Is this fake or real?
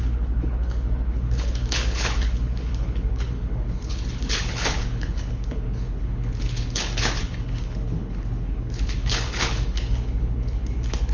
fake